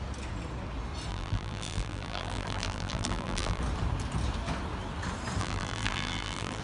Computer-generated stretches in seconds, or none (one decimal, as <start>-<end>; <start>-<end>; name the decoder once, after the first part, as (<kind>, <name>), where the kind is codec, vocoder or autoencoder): 1.1-3.6 (vocoder, BigVGAN v2); 5.4-6.6